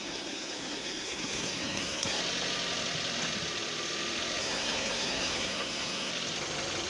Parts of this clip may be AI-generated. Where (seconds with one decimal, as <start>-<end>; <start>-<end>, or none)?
0.0-2.2; 4.4-6.1